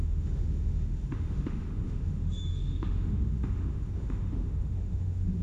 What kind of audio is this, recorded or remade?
remade